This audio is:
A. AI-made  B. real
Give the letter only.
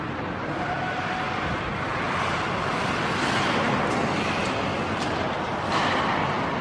B